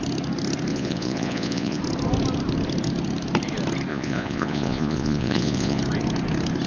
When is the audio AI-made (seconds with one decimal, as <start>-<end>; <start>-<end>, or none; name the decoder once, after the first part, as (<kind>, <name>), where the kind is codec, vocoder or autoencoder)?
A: 0.7-1.8 (vocoder, Vocos); 3.9-5.8